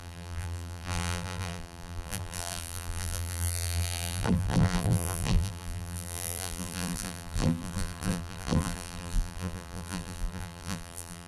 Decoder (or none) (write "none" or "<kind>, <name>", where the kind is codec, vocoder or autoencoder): vocoder, BigVGAN v2